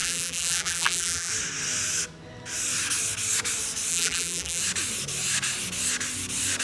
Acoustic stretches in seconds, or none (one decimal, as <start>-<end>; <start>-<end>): 1.3-3.9; 4.6-6.6

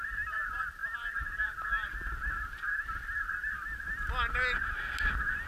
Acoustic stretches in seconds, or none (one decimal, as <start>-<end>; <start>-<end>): 0.0-5.5